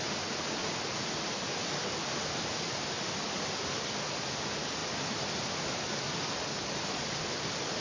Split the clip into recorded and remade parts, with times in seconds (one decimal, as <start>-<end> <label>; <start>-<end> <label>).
0.0-7.8 recorded